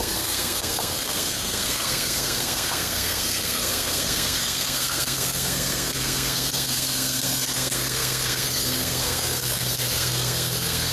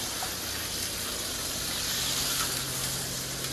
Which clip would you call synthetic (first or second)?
first